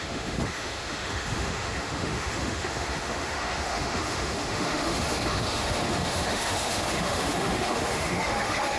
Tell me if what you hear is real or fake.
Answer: fake